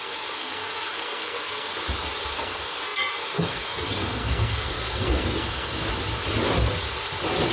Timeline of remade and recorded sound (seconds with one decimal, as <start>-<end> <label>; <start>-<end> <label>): 0.0-1.7 remade; 1.7-2.2 recorded; 2.2-5.8 remade; 5.8-7.5 recorded